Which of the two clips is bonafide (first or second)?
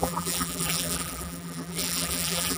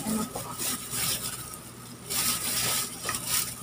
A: second